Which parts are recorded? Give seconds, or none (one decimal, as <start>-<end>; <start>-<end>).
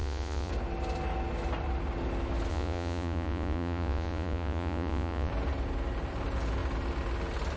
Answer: 0.5-2.5; 5.3-7.6